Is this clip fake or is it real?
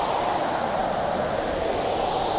real